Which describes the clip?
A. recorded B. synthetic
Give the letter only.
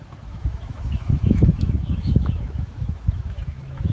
B